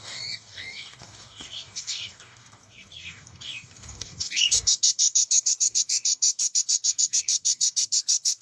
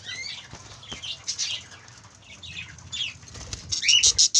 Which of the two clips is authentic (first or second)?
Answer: second